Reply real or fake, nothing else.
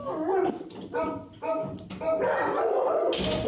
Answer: real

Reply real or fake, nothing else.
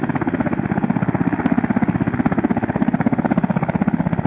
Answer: real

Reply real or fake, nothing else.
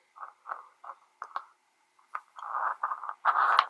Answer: real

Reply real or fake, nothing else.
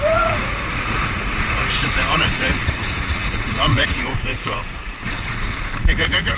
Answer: fake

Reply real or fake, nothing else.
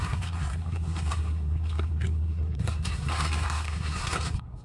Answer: fake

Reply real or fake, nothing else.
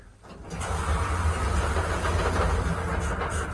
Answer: real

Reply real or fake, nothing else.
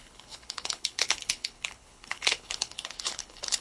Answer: fake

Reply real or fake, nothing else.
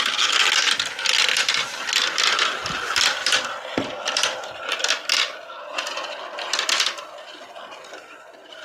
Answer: real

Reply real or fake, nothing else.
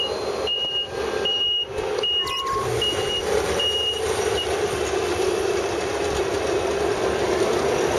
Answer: fake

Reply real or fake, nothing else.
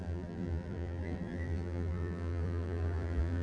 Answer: fake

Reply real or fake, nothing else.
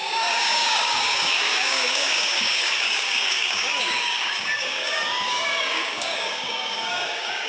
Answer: fake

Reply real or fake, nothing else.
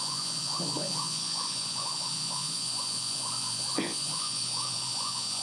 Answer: fake